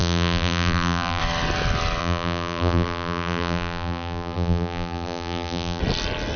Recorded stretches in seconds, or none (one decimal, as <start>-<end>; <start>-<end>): 1.2-2.0; 5.8-6.4